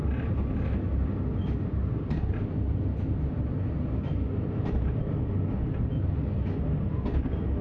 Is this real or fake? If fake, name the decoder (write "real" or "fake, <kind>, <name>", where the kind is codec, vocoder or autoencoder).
real